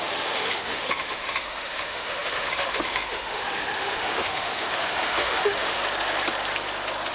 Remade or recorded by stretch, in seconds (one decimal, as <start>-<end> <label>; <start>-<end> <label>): 0.0-5.8 remade; 5.8-7.1 recorded